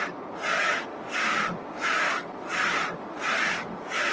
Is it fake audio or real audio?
real